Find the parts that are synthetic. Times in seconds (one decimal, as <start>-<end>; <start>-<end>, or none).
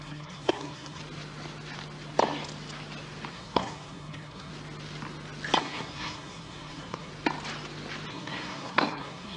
0.0-1.0; 3.3-4.5; 5.6-7.1; 8.1-9.4